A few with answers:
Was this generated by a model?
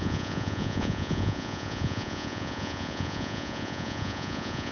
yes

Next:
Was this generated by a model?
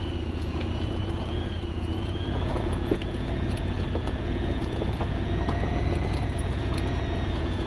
yes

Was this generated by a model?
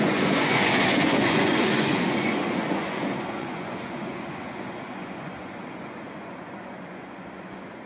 yes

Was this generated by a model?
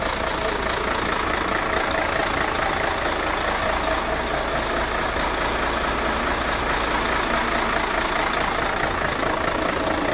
no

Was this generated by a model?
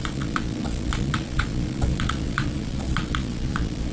yes